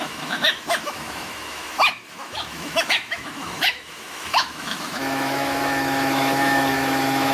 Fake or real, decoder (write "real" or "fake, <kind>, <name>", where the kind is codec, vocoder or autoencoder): fake, autoencoder, DAC-VAE